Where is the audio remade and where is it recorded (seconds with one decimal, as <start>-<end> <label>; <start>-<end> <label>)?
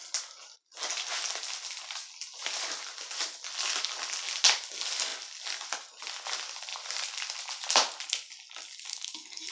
0.0-8.9 recorded; 8.9-9.5 remade